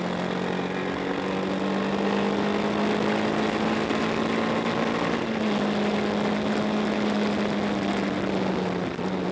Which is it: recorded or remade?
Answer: recorded